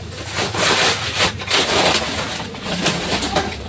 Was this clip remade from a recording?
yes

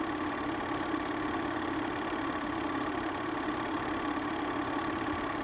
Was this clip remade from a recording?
no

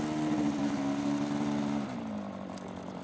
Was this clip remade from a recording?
no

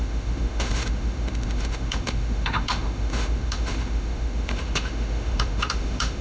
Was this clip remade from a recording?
yes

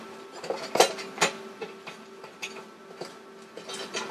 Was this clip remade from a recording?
no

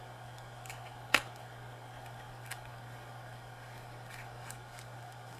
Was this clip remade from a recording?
yes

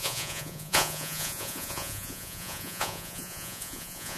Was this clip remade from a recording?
yes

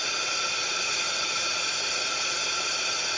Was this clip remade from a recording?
no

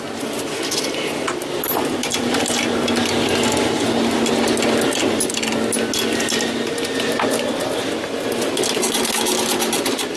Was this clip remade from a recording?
no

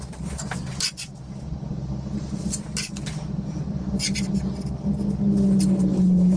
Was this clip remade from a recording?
no